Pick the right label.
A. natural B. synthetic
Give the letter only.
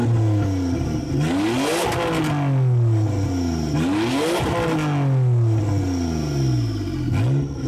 A